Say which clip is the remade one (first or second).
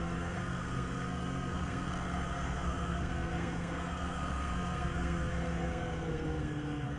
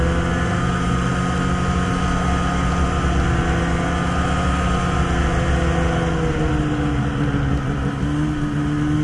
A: first